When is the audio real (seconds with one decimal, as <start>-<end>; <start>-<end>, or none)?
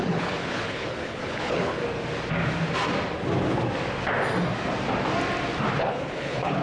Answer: 1.8-5.8